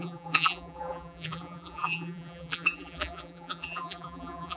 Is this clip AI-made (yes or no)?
yes